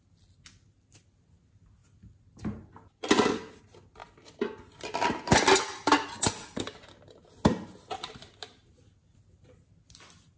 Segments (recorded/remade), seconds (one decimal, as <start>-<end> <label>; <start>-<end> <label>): 0.0-10.4 recorded